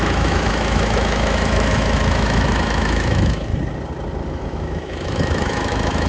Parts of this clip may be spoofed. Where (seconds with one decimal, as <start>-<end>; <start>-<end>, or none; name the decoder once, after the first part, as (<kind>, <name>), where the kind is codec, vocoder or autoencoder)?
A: 0.0-3.5 (autoencoder, DAC-VAE); 4.3-6.1